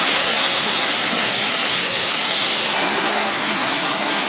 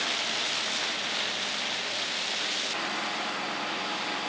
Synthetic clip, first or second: first